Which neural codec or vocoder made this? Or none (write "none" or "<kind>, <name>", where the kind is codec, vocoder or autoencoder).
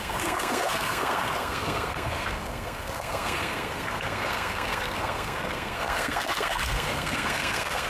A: codec, SNAC